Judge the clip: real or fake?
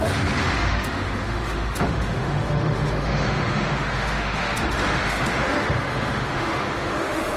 fake